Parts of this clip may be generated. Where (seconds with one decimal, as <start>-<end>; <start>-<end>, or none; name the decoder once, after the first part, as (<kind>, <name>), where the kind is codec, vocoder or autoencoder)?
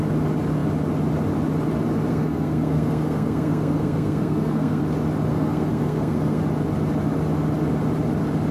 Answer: 2.1-4.8 (codec, SNAC); 5.3-6.4